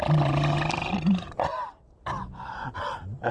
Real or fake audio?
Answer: real